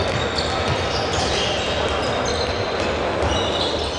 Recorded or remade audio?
recorded